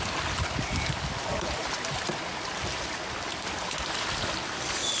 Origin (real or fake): real